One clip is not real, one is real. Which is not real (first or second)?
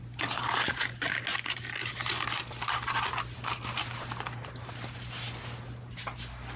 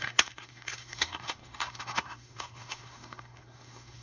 second